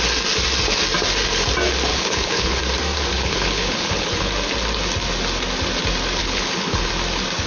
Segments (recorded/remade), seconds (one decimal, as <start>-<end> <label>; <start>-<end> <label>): 0.0-1.9 recorded; 1.9-2.6 remade; 2.6-3.1 recorded; 3.1-4.3 remade; 4.3-6.2 recorded; 6.2-6.9 remade; 6.9-7.5 recorded